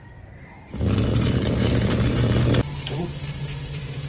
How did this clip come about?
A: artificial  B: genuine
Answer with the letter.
A